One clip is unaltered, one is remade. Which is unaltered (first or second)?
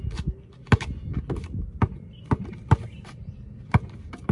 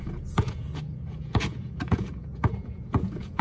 first